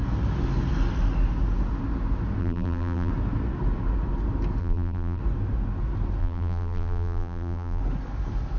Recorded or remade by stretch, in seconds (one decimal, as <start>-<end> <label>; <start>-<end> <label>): 0.0-2.4 recorded; 2.4-3.1 remade; 3.1-4.6 recorded; 4.6-5.2 remade; 5.2-6.2 recorded; 6.2-7.8 remade; 7.8-8.6 recorded